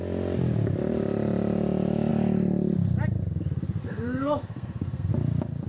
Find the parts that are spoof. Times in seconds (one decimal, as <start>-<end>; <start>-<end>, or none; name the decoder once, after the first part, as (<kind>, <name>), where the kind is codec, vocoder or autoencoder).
3.8-5.1 (codec, SNAC)